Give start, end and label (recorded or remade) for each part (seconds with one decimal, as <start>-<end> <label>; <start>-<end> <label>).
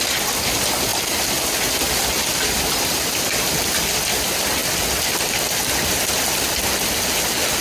0.0-7.6 recorded